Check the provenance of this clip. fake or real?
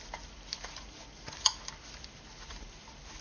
real